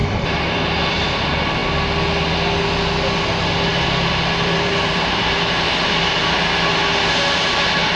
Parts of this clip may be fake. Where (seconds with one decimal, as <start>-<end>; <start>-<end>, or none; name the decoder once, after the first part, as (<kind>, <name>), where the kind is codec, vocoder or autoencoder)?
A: 0.0-1.2 (vocoder, BigVGAN v2); 3.7-6.2